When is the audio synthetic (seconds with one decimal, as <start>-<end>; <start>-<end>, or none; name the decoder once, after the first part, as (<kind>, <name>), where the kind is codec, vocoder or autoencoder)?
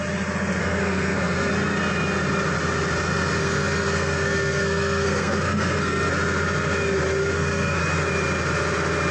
0.6-1.5 (codec, SNAC); 3.4-6.1; 7.2-7.8